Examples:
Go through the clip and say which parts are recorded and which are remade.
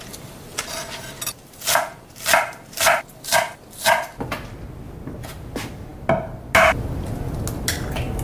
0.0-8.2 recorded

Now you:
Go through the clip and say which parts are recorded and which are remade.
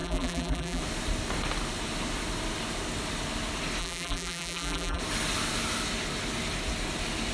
0.0-0.8 remade; 0.8-3.8 recorded; 3.8-5.0 remade; 5.0-7.3 recorded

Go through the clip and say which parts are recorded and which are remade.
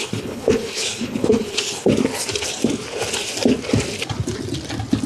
0.0-1.9 remade; 1.9-5.1 recorded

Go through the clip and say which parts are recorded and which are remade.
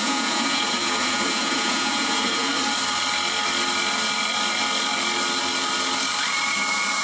0.0-2.5 remade; 2.5-7.0 recorded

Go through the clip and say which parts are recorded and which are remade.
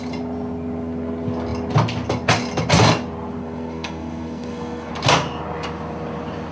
0.0-3.4 recorded; 3.4-4.9 remade; 4.9-6.5 recorded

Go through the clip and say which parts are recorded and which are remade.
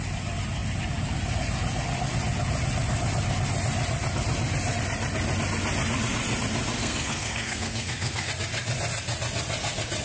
0.0-6.8 recorded; 6.8-8.3 remade; 8.3-10.0 recorded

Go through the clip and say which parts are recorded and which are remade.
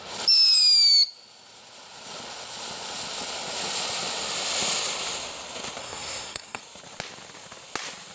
0.0-5.8 recorded; 5.8-6.6 remade; 6.6-8.1 recorded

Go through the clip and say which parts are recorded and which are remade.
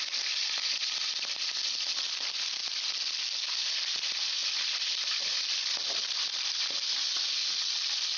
0.0-8.2 recorded